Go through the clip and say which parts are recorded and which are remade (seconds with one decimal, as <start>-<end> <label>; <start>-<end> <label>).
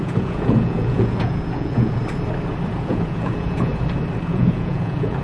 0.0-2.0 remade; 2.0-2.7 recorded; 2.7-3.7 remade; 3.7-4.3 recorded; 4.3-5.2 remade